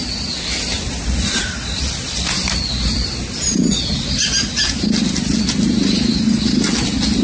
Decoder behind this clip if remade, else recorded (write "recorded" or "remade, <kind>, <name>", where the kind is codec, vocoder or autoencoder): recorded